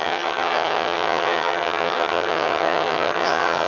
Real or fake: fake